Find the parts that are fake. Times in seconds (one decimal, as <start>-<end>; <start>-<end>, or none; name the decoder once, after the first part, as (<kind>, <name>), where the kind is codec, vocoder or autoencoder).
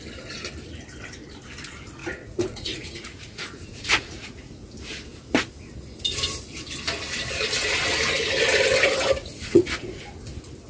2.0-4.5 (vocoder, Vocos); 9.2-10.0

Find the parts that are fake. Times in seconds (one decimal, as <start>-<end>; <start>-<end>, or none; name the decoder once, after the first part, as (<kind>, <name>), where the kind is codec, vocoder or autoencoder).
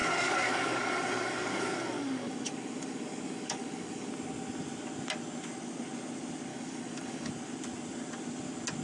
0.0-4.1 (codec, DAC); 6.5-7.3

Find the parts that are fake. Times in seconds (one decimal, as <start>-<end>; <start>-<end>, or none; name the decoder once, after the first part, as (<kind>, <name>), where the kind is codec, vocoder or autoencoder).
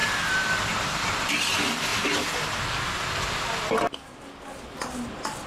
none